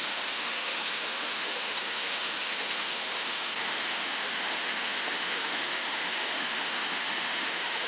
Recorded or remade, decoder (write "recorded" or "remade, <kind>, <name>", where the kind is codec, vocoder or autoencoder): remade, autoencoder, DAC-VAE